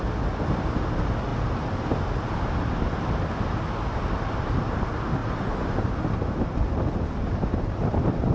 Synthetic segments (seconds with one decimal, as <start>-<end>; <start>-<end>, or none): 1.3-2.7; 5.2-6.8